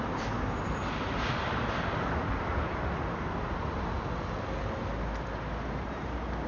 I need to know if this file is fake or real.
real